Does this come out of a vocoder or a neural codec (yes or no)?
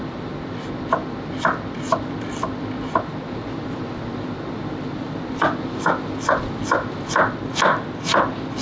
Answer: no